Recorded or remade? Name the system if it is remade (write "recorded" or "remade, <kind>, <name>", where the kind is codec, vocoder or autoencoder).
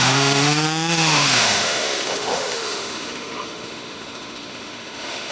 remade, autoencoder, DAC-VAE